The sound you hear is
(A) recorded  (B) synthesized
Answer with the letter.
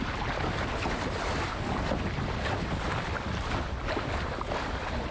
A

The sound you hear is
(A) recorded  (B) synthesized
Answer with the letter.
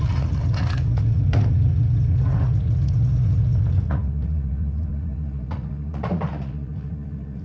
B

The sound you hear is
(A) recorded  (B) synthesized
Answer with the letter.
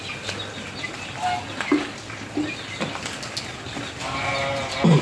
A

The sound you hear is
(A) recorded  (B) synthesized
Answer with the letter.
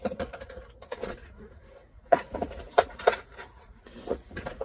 B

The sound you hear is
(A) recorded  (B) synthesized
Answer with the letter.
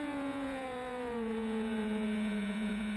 B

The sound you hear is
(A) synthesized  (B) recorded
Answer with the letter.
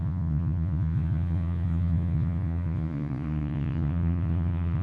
A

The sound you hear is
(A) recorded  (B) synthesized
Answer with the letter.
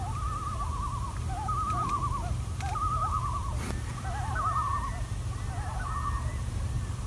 A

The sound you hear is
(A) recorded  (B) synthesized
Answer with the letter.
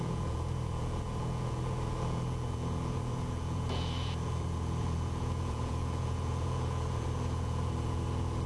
B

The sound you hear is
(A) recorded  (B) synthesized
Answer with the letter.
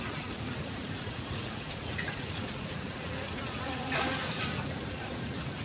B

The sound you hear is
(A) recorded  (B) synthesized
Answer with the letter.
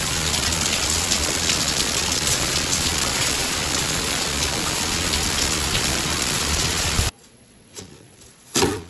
B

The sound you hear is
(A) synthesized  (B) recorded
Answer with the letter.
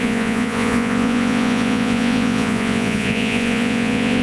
A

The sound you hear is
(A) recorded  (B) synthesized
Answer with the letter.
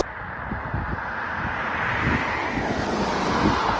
A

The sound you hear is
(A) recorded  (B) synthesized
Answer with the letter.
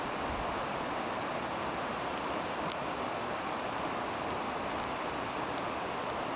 A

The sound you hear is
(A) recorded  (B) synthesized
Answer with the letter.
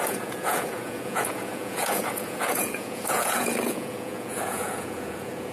B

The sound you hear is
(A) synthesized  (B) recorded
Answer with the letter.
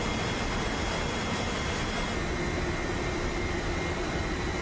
B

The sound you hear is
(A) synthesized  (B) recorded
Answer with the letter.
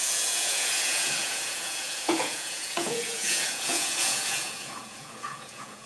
A